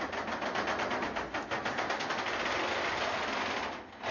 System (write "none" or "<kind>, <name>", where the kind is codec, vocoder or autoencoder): none